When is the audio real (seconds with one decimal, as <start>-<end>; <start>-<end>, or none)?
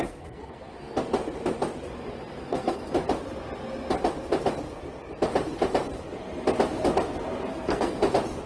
0.9-2.4; 2.9-7.5; 8.0-8.5